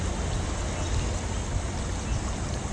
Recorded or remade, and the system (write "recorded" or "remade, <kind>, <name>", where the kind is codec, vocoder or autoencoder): recorded